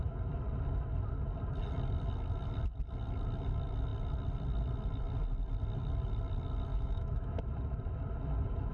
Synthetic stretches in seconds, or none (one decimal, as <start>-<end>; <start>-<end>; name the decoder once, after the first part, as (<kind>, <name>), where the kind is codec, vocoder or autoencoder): 6.7-7.4 (autoencoder, DAC-VAE)